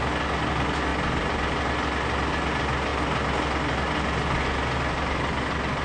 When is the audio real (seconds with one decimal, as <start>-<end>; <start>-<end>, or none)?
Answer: 0.0-5.8